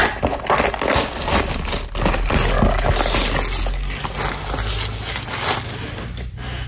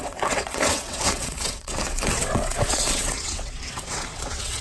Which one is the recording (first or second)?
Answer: first